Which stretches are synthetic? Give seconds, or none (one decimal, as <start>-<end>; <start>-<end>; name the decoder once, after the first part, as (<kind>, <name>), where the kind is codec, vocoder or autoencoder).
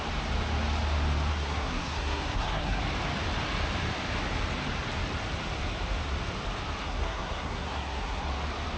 1.3-2.8 (codec, SNAC); 6.8-8.3